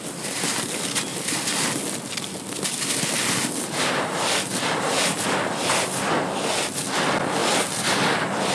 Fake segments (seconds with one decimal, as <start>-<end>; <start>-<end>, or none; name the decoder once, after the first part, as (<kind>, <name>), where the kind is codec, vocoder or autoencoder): 1.1-1.8 (vocoder, BigVGAN v2)